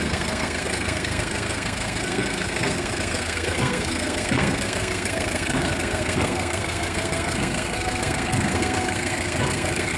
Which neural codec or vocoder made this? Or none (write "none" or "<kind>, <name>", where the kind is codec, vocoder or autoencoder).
codec, SNAC